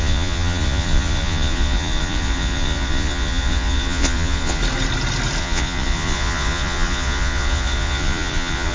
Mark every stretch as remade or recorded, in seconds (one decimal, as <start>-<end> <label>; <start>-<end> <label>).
0.0-4.6 remade; 4.6-5.4 recorded; 5.4-8.7 remade